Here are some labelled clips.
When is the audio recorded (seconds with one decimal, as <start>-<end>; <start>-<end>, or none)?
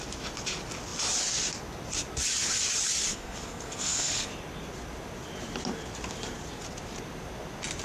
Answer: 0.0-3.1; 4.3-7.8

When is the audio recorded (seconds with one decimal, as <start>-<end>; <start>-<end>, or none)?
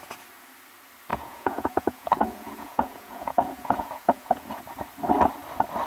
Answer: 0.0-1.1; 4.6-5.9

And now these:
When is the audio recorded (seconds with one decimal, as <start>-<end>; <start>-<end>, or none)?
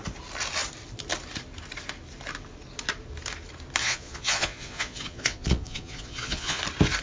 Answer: 0.0-3.8; 6.6-7.0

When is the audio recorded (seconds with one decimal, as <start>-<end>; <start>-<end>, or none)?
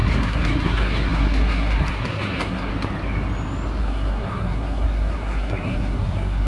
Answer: 2.7-3.8